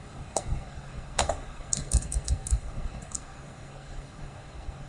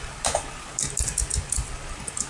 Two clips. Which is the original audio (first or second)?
second